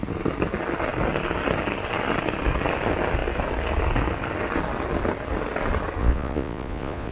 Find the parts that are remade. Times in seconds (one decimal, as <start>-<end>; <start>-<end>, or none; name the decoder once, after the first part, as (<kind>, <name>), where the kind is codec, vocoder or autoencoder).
6.0-7.1 (vocoder, Vocos)